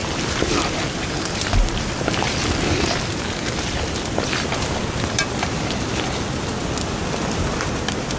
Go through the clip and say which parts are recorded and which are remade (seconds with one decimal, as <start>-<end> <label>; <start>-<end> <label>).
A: 0.0-8.2 recorded